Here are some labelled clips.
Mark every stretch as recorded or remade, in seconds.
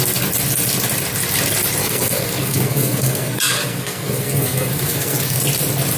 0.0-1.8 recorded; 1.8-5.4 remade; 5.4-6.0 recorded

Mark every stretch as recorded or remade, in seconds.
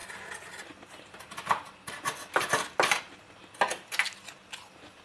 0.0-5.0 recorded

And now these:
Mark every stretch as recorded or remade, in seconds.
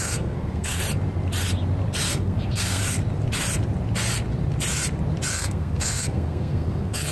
0.0-0.8 remade; 0.8-2.1 recorded; 2.1-2.8 remade; 2.8-5.3 recorded; 5.3-7.1 remade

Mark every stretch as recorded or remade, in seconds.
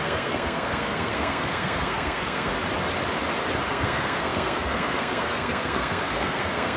0.0-2.5 remade; 2.5-3.7 recorded; 3.7-6.8 remade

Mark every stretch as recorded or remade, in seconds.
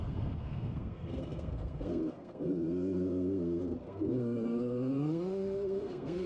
0.0-6.3 remade